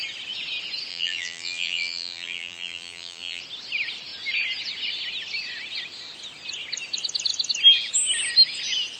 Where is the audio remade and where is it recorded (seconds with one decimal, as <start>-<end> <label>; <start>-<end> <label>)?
0.0-0.9 recorded; 0.9-3.4 remade; 3.4-9.0 recorded